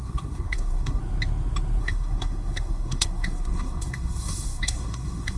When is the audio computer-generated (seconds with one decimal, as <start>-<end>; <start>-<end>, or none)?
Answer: 0.0-1.0; 1.8-5.4